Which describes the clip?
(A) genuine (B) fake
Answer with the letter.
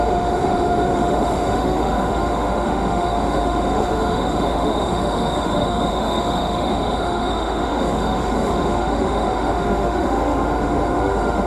B